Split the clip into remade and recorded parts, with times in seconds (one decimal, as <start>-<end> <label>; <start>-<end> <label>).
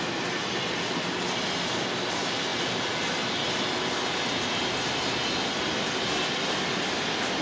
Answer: 0.0-7.4 recorded